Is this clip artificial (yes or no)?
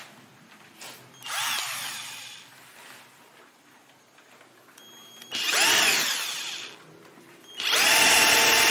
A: no